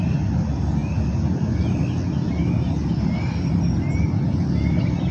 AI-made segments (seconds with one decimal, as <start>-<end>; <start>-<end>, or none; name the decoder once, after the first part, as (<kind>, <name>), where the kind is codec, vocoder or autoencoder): none